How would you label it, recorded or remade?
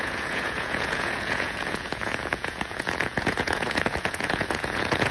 remade